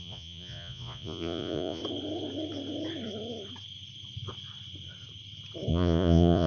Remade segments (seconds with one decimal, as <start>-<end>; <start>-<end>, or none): 0.0-1.8; 5.7-6.5